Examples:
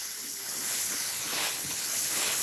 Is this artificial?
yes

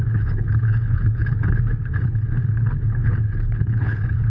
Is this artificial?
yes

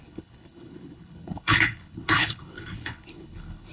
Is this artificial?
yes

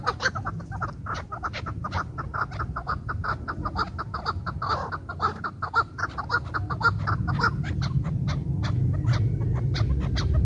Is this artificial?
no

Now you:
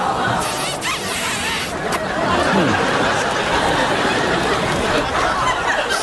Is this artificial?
no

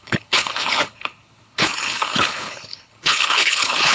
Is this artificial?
yes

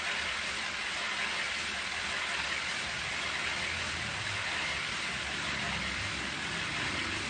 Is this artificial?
no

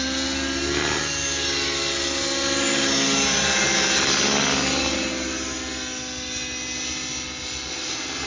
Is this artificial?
no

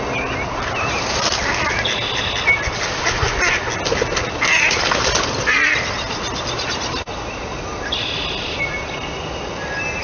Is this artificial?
no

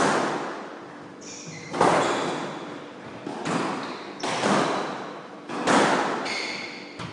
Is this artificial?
no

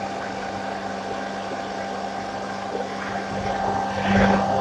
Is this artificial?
no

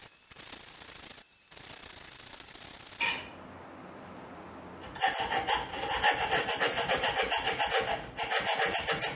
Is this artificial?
no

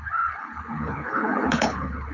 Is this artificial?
yes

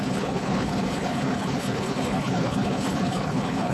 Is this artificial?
yes